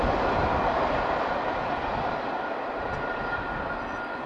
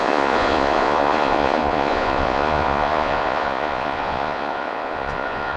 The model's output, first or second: second